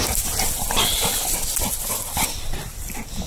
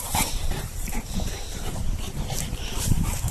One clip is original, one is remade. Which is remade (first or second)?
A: second